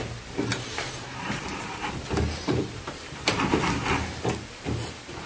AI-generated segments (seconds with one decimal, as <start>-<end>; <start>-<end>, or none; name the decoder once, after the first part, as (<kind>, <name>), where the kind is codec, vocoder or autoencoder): 0.5-3.7 (vocoder, BigVGAN v2)